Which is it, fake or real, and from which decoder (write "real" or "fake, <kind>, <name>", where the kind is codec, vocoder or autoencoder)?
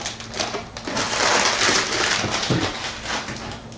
real